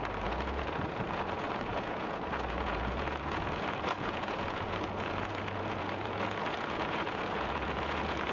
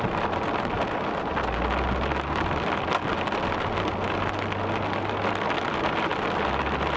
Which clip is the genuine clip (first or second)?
second